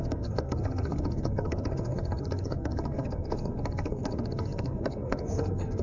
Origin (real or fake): fake